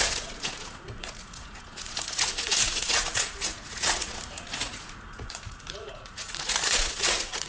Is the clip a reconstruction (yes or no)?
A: yes